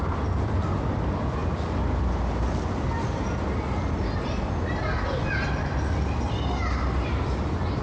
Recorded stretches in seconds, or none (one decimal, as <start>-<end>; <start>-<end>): 0.0-7.8